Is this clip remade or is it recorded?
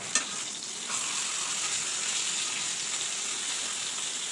recorded